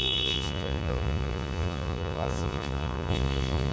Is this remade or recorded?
remade